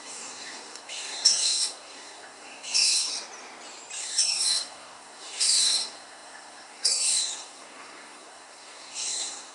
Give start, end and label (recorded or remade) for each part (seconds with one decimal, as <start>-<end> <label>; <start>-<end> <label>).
0.0-3.1 remade; 3.1-4.0 recorded; 4.0-9.5 remade